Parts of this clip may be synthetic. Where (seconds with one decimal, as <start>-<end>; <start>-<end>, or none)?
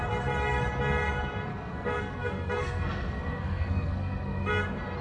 1.5-4.5